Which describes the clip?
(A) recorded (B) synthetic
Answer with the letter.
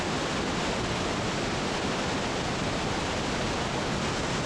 A